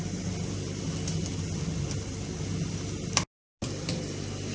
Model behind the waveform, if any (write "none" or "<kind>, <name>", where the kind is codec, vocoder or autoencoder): none